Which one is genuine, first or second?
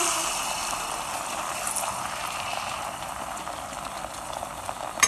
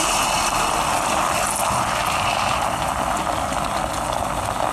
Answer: second